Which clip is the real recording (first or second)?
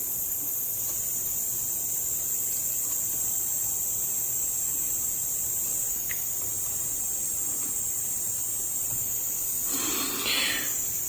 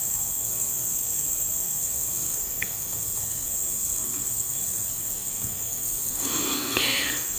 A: first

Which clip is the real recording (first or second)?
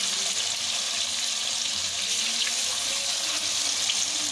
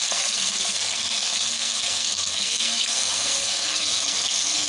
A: first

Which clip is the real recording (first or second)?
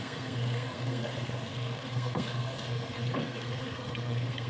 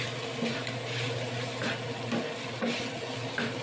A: second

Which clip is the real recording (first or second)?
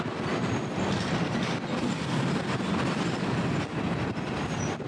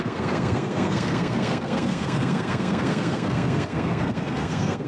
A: first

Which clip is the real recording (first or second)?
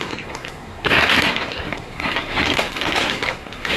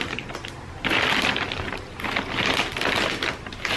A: second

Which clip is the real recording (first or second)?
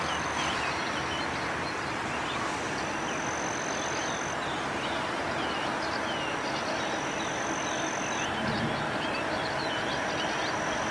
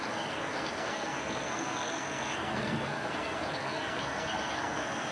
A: first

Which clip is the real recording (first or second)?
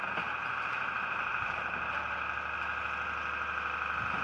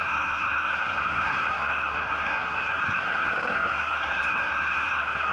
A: first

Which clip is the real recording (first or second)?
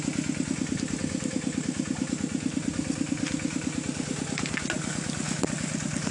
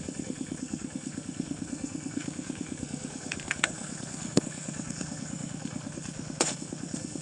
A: first